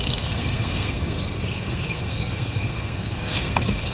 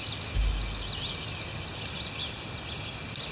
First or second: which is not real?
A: first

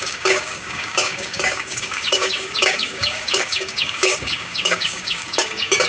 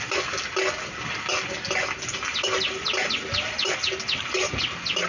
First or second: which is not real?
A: first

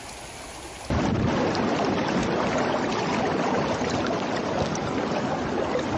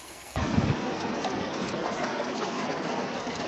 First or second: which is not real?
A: second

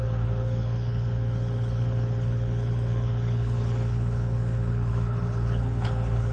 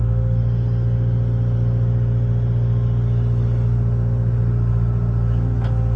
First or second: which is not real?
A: first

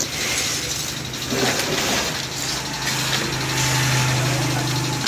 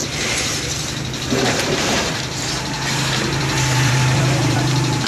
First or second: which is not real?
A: second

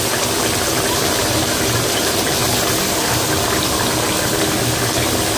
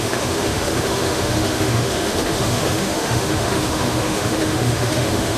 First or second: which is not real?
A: second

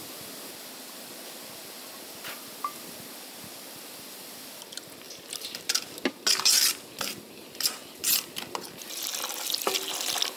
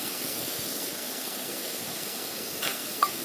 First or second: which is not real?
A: second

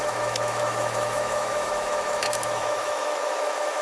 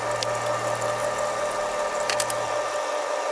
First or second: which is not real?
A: first